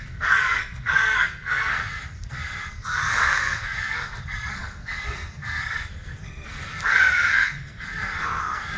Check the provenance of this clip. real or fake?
fake